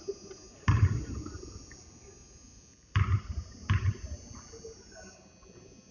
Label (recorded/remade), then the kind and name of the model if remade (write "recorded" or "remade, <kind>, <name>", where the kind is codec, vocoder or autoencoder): recorded